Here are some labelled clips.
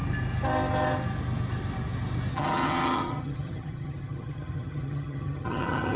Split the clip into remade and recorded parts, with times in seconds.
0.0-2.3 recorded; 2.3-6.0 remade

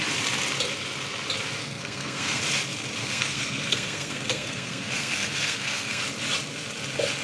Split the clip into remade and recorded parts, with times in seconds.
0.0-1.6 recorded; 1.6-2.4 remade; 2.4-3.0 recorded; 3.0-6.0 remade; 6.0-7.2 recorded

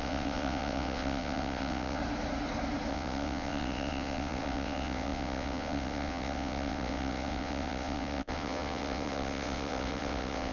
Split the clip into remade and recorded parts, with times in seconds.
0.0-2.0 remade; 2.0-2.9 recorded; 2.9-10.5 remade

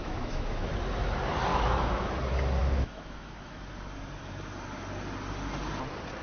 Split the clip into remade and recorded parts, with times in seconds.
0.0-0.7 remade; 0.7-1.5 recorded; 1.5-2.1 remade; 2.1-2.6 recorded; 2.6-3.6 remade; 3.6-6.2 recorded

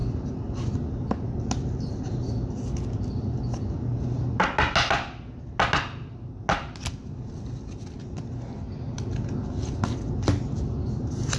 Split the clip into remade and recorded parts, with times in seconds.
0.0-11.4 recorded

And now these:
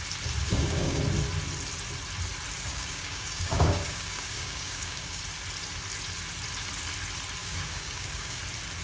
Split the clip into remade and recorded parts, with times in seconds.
0.0-0.4 recorded; 0.4-1.0 remade; 1.0-2.7 recorded; 2.7-5.2 remade; 5.2-7.4 recorded; 7.4-8.4 remade; 8.4-8.8 recorded

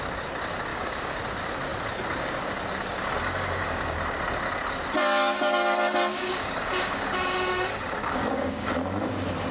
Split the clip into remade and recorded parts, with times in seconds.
0.0-0.7 recorded; 0.7-1.2 remade; 1.2-3.2 recorded; 3.2-4.0 remade; 4.0-5.0 recorded; 5.0-8.7 remade; 8.7-9.5 recorded